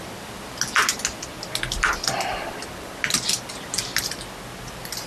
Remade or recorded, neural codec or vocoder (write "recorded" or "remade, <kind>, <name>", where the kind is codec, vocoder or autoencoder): recorded